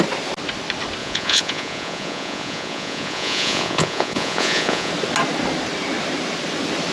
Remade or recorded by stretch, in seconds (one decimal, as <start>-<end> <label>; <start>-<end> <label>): 0.0-1.0 recorded; 1.0-4.9 remade; 4.9-6.9 recorded